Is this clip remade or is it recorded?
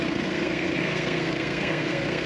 remade